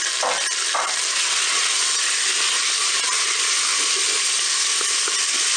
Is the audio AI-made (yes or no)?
no